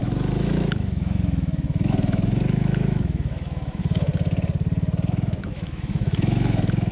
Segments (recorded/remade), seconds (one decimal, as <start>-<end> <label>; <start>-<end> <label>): 0.0-4.1 remade; 4.1-5.1 recorded; 5.1-6.9 remade